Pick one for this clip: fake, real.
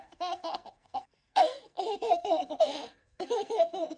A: fake